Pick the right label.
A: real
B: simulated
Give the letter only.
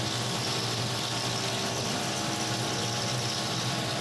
A